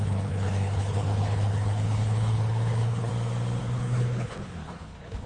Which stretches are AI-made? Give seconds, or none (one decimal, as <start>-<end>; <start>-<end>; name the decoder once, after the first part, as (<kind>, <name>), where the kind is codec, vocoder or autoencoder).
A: 0.0-3.1 (codec, HILCodec); 3.6-5.3